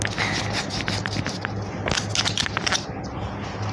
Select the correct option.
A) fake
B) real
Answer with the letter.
B